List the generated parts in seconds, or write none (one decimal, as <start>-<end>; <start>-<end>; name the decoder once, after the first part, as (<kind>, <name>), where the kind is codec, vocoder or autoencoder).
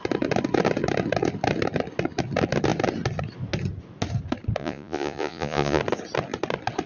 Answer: 4.6-5.8 (vocoder, Vocos)